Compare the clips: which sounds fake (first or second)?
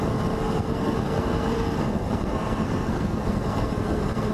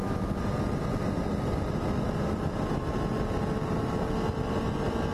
first